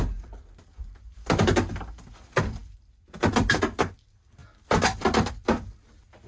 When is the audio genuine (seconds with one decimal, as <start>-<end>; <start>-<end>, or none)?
0.0-6.3